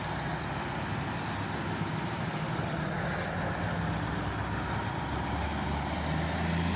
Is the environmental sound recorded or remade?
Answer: recorded